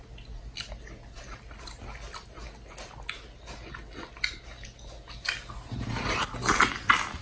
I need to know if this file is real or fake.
real